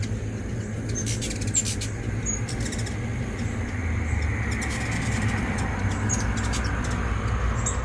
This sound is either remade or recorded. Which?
recorded